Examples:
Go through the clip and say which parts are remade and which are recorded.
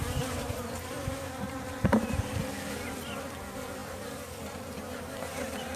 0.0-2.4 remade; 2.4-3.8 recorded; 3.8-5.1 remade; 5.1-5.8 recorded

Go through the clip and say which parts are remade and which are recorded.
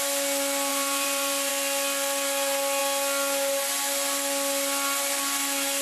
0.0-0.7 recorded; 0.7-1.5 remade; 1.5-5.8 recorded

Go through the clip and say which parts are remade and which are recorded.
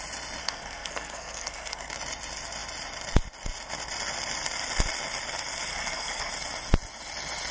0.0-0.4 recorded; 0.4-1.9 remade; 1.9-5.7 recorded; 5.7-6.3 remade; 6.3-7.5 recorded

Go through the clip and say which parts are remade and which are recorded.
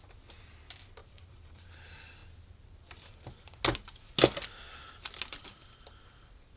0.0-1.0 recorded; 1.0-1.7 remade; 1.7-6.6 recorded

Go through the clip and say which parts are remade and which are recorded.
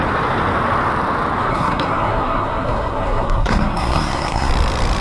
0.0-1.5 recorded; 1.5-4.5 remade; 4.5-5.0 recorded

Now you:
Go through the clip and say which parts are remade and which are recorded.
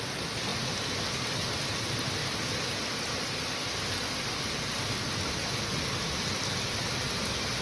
0.0-7.6 recorded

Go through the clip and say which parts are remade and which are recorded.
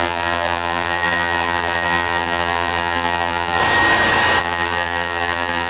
0.0-3.6 remade; 3.6-4.4 recorded; 4.4-5.7 remade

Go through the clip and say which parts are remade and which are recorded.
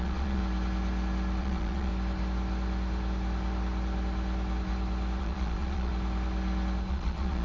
0.0-0.4 remade; 0.4-1.4 recorded; 1.4-1.9 remade; 1.9-5.2 recorded; 5.2-5.9 remade; 5.9-6.9 recorded; 6.9-7.4 remade